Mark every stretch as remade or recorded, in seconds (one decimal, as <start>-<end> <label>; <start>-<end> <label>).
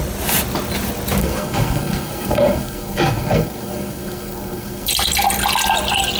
0.0-1.2 recorded; 1.2-4.9 remade; 4.9-6.2 recorded